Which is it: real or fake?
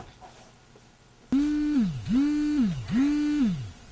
real